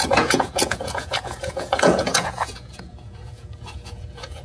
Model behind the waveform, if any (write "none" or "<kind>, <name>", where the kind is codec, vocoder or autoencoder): vocoder, Vocos